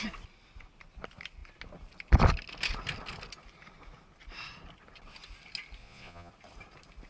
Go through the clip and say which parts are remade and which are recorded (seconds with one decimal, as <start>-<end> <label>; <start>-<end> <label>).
0.0-5.8 recorded; 5.8-6.3 remade; 6.3-7.1 recorded